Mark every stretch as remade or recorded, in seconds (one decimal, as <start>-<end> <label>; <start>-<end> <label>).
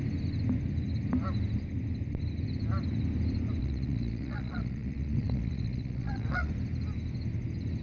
0.0-3.6 recorded; 3.6-6.5 remade; 6.5-7.8 recorded